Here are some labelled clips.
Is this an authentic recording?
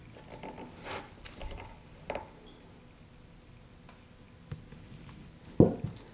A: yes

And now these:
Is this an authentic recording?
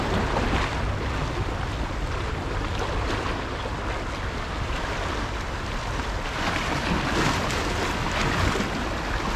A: yes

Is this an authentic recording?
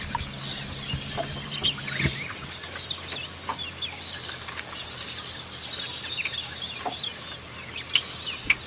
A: yes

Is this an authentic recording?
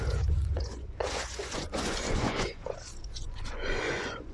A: no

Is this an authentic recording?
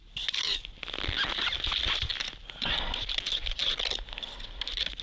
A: yes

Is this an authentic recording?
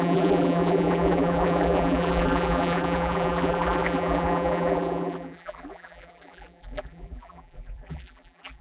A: no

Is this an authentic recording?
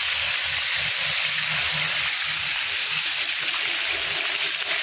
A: yes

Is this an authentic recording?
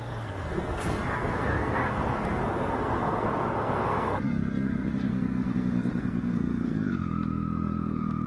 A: no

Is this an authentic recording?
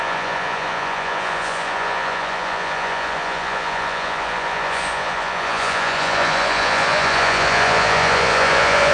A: no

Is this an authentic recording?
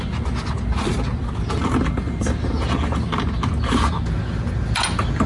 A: yes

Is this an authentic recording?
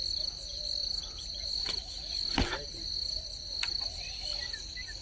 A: yes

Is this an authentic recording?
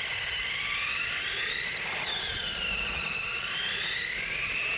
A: yes